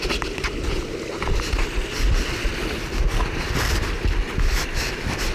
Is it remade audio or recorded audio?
recorded